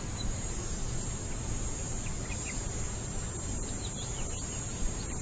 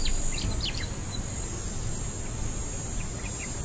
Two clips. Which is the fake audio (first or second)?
first